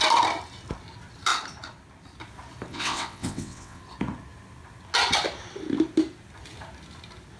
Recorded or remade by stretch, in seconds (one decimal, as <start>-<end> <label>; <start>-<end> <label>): 0.0-2.7 recorded; 2.7-3.8 remade; 3.8-7.4 recorded